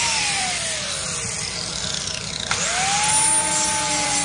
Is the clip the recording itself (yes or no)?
yes